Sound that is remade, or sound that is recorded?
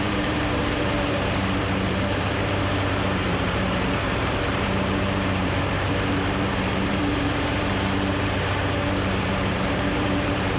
remade